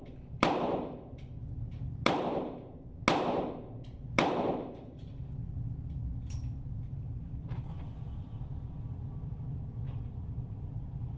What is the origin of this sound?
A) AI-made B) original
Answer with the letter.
B